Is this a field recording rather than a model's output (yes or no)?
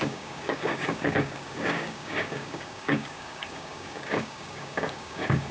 no